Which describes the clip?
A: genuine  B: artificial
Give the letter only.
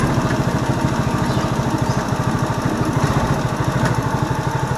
A